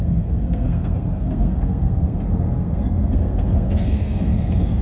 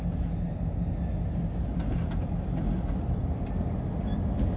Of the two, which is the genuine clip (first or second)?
second